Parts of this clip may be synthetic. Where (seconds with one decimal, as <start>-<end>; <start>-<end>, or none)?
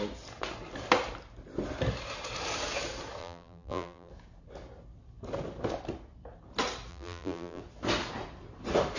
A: 3.2-4.1; 6.9-7.6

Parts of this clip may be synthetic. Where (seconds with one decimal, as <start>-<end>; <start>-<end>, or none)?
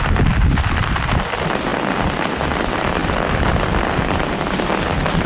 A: 0.0-1.7; 2.2-5.3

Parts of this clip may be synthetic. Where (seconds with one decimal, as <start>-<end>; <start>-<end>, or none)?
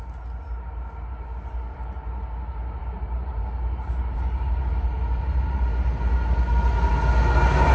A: 2.8-5.6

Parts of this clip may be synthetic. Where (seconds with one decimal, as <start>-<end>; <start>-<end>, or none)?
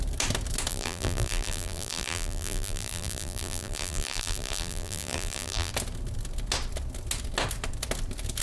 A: 0.7-5.7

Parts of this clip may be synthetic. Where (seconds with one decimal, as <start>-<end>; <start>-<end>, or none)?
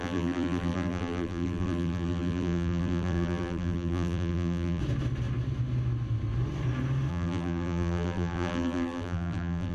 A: 0.0-4.8; 7.1-9.7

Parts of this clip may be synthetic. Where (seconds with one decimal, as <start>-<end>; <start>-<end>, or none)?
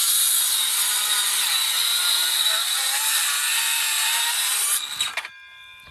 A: none